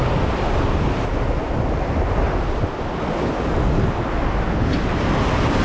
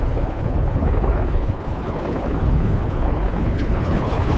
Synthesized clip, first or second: second